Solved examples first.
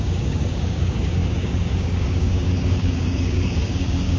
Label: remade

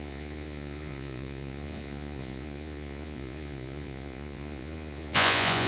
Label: remade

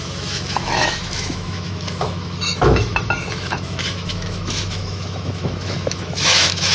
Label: remade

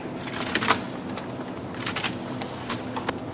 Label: recorded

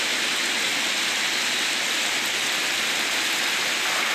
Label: recorded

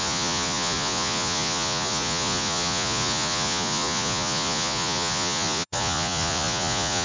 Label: remade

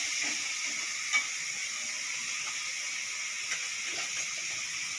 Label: recorded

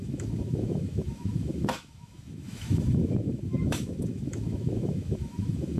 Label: remade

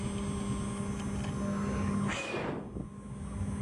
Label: recorded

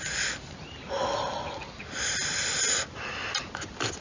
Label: recorded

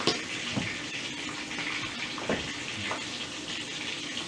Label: recorded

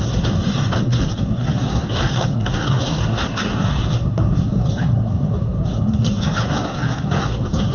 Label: remade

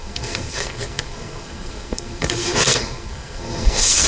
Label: remade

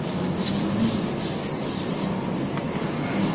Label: recorded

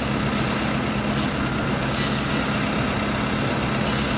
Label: recorded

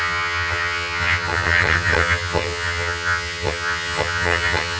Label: remade